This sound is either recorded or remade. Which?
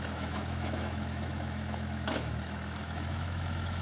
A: remade